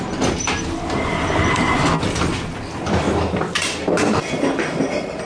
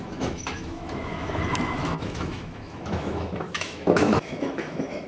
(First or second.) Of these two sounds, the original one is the first